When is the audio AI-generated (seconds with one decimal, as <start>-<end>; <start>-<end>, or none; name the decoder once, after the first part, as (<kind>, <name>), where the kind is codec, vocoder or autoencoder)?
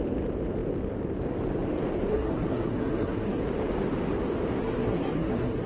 2.1-3.4 (codec, SNAC); 4.6-5.7